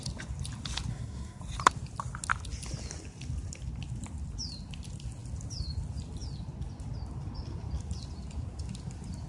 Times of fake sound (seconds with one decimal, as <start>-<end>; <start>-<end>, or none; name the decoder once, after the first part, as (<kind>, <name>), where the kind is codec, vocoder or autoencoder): 0.9-1.4 (codec, SNAC)